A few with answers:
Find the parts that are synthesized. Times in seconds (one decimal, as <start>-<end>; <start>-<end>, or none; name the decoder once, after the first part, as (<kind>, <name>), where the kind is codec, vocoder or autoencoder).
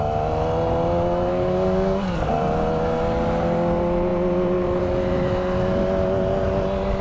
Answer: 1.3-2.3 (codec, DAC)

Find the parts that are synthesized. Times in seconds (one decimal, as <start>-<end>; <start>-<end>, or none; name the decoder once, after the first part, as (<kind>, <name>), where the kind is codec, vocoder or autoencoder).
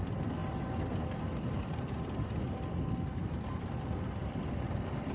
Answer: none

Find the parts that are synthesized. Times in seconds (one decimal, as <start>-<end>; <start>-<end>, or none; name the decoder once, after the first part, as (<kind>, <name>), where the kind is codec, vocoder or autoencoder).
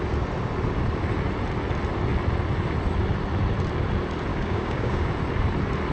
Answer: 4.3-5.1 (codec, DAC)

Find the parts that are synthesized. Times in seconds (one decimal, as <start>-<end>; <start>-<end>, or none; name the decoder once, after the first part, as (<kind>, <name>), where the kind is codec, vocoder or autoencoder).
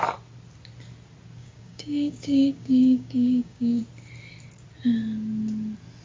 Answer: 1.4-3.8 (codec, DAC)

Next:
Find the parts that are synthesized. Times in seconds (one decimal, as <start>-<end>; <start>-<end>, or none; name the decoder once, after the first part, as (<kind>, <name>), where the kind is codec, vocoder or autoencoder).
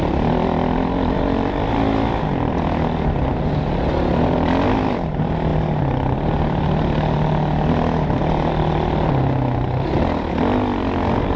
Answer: none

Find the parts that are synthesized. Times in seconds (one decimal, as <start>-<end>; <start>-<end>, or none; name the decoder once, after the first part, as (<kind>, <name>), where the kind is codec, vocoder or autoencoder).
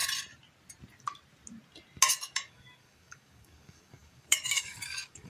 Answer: 2.1-5.3 (codec, DAC)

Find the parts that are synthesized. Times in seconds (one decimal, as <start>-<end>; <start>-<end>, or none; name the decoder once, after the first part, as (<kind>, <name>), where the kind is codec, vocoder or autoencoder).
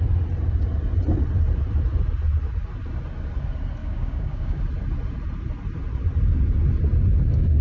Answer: 3.8-4.6 (codec, DAC)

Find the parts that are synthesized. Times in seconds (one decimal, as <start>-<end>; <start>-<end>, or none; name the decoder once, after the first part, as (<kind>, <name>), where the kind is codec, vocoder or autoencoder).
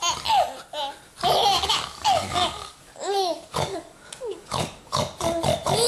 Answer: 1.5-5.0 (codec, DAC)